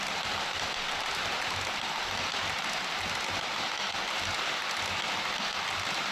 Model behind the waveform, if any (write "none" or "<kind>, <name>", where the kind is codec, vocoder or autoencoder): none